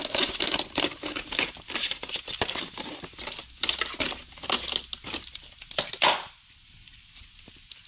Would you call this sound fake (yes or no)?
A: no